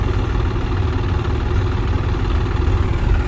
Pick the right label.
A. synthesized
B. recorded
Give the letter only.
B